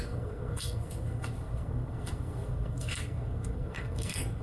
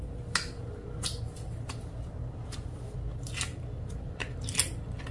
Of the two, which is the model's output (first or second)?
first